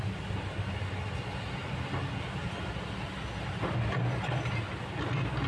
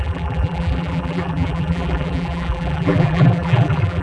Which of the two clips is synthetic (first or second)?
second